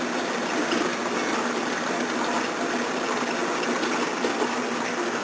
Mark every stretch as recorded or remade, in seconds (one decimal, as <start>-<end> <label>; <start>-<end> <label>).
0.0-5.2 recorded